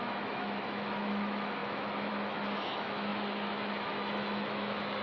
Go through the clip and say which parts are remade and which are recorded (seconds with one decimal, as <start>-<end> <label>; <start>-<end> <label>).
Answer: 0.0-5.0 remade